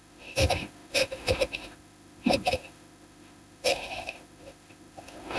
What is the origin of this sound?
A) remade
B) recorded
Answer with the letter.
A